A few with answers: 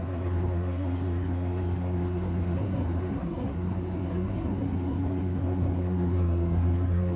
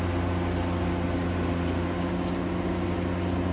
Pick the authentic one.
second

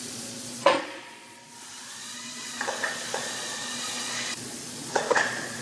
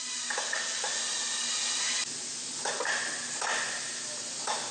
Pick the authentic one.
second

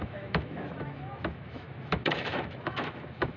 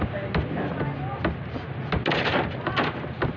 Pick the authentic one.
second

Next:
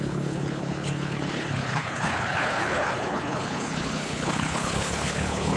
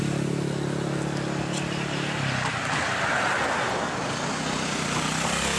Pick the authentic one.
second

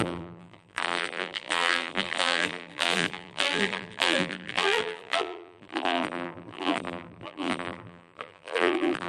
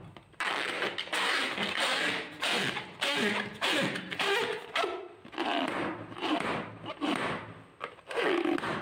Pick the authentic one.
second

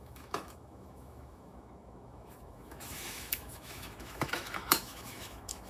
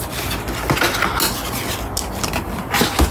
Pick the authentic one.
second